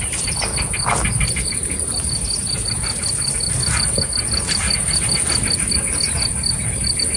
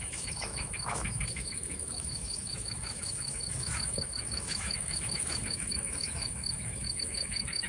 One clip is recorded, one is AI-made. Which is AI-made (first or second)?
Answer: second